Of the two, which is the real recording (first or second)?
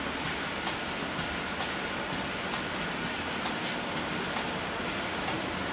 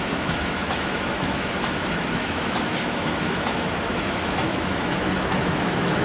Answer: first